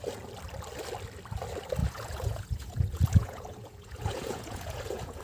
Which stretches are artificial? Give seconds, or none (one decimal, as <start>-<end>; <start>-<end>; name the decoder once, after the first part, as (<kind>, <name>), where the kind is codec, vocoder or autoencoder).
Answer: 1.8-5.2 (vocoder, Vocos)

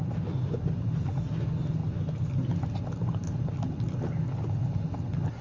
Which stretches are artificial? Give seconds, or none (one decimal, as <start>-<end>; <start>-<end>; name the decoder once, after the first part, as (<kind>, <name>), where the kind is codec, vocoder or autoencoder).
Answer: none

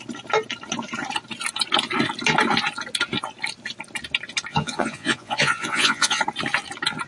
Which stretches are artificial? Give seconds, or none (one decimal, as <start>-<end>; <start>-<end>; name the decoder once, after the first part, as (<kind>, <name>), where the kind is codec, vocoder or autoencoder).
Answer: 4.5-6.2 (vocoder, Vocos)

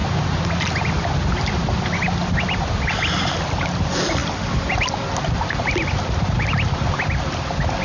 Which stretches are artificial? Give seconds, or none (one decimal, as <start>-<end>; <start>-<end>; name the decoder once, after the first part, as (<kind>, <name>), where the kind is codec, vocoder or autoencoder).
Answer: none

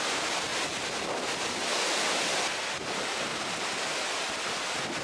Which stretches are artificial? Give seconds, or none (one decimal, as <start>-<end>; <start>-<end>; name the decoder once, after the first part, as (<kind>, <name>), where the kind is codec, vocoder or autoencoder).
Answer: none

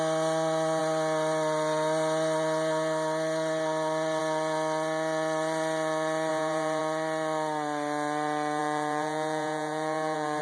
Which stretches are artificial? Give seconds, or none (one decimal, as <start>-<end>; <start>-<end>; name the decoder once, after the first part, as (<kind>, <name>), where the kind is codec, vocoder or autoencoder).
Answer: 6.3-6.8 (vocoder, Vocos); 8.6-10.4

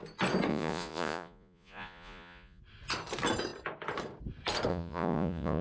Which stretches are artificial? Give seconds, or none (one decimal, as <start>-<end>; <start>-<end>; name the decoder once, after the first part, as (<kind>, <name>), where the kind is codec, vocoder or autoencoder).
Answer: 0.5-2.6 (vocoder, Vocos); 4.7-5.6